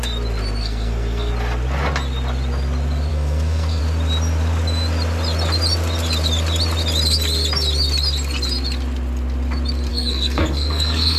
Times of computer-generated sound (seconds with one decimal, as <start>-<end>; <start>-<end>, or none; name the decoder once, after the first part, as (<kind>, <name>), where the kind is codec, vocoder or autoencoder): 0.6-1.3 (codec, SNAC); 3.1-3.8; 9.9-11.2